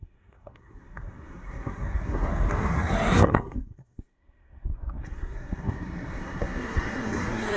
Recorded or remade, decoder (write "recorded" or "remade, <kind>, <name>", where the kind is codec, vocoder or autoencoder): remade, codec, SNAC